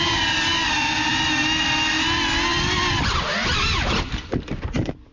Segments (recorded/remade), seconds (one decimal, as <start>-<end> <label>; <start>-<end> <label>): 0.0-5.1 recorded